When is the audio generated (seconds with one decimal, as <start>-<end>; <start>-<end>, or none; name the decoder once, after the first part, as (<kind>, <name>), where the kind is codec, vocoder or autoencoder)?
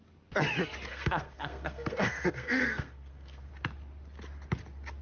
0.9-3.5 (codec, SNAC)